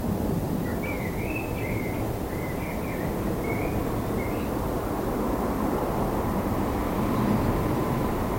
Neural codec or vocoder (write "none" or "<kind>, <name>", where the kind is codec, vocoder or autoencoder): vocoder, BigVGAN v2